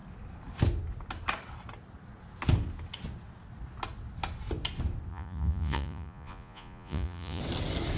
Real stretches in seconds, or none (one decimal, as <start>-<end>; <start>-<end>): 0.0-5.1; 7.4-8.0